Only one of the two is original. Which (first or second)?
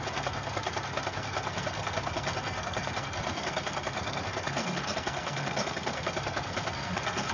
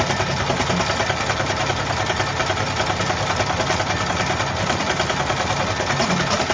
second